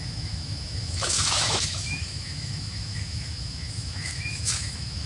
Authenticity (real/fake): fake